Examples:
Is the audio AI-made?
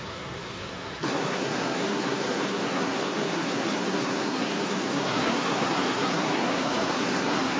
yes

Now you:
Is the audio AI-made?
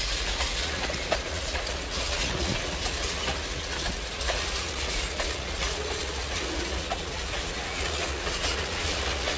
yes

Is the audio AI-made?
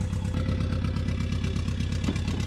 no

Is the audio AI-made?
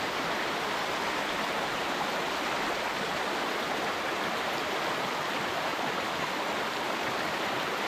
no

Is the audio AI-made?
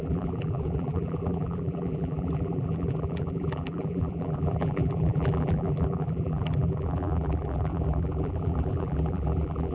yes